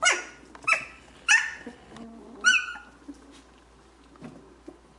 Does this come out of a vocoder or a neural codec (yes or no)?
no